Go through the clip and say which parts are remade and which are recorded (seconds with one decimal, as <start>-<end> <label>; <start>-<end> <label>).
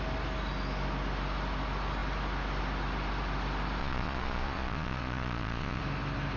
0.0-3.8 recorded; 3.8-5.8 remade; 5.8-6.4 recorded